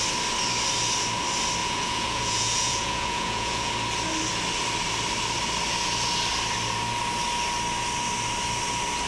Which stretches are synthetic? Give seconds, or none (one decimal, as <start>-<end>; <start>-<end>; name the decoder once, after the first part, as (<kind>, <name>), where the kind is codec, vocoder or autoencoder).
1.6-3.7 (vocoder, Vocos)